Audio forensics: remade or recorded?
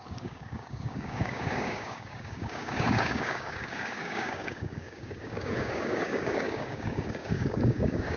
remade